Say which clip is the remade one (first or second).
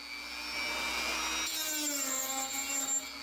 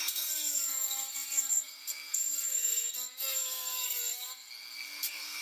second